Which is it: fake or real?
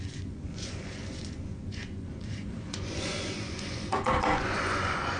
fake